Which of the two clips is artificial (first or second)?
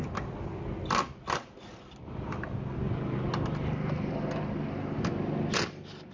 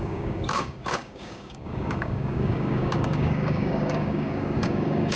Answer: second